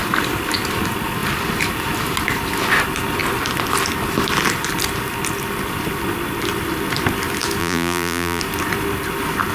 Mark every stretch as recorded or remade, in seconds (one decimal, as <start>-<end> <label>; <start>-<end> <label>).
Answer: 0.0-7.6 recorded; 7.6-8.4 remade; 8.4-9.5 recorded